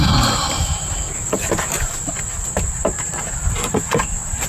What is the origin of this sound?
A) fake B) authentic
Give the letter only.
A